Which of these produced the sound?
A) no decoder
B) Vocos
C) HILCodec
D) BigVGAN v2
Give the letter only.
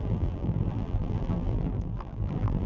D